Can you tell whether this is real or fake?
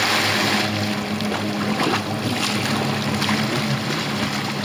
real